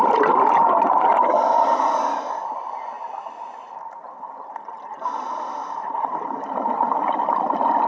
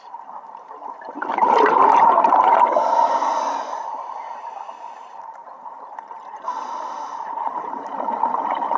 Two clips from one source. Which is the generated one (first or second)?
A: second